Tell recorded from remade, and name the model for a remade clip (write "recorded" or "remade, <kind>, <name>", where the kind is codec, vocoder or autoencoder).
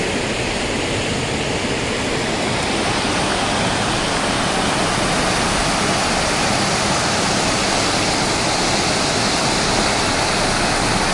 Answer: recorded